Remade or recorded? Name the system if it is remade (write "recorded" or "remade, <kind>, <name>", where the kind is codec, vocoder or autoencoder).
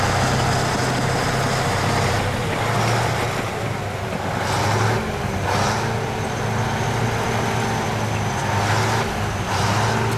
recorded